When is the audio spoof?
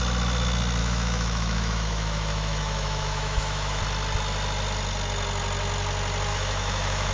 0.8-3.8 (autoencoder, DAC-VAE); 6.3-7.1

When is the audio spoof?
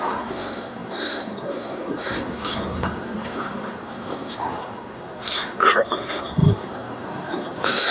0.0-7.9 (codec, SNAC)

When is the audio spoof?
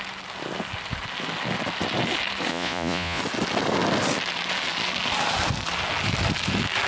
2.5-3.2 (vocoder, Vocos)